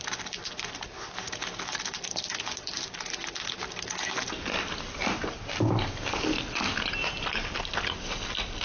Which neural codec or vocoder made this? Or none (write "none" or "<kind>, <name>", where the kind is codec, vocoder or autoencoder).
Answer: none